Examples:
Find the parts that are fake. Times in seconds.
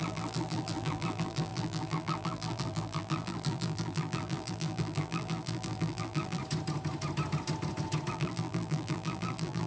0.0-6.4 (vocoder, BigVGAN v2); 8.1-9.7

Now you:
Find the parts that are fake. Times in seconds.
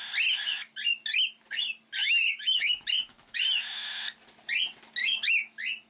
2.0-3.5 (autoencoder, DAC-VAE); 5.0-5.9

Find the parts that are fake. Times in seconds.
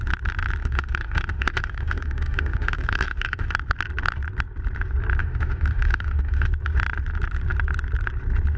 0.6-3.5 (autoencoder, DAC-VAE); 5.2-6.5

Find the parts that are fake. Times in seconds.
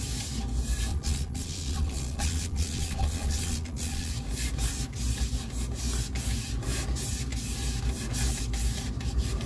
0.9-4.1 (vocoder, Vocos)